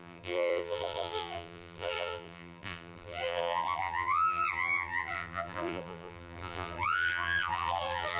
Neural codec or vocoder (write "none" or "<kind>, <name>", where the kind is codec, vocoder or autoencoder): vocoder, BigVGAN v2